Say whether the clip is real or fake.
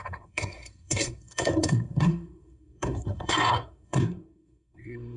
fake